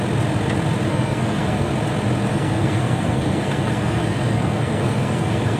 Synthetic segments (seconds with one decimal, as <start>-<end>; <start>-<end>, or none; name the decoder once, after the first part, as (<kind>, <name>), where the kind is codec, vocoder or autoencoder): 0.9-1.7 (codec, SNAC); 2.3-5.6